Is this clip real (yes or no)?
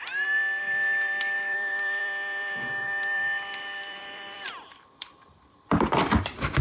no